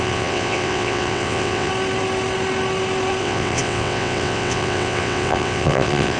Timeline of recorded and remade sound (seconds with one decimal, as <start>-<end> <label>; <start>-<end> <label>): 0.0-1.7 remade; 1.7-3.2 recorded; 3.2-6.2 remade